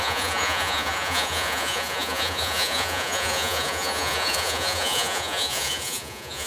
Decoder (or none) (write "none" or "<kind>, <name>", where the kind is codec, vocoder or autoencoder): vocoder, Vocos